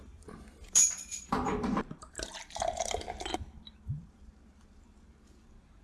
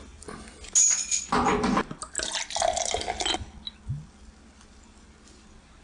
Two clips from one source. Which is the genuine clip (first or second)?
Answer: second